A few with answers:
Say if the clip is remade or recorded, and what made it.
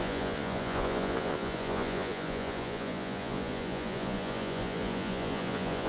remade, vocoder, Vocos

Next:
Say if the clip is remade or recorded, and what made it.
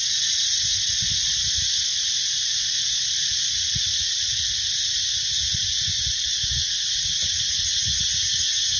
recorded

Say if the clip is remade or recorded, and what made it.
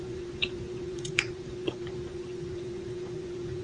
remade, vocoder, Vocos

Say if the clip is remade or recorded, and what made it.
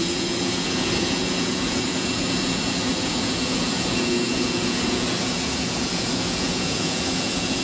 remade, vocoder, Vocos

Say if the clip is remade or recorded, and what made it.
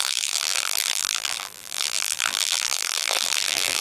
remade, vocoder, BigVGAN v2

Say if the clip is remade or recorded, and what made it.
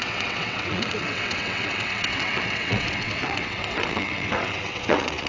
remade, vocoder, WaveNeXt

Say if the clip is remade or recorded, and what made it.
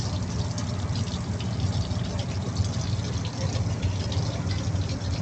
recorded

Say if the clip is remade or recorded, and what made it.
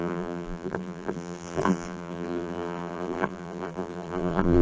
remade, vocoder, BigVGAN v2